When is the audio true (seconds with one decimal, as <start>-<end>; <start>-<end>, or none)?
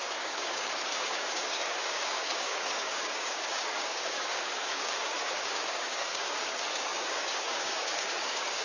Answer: none